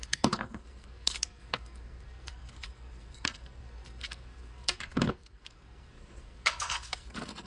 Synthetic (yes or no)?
yes